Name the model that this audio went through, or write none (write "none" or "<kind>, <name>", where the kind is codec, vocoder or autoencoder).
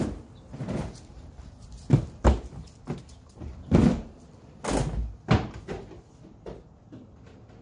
none